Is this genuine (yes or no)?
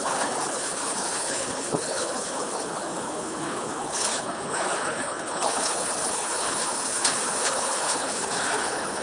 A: no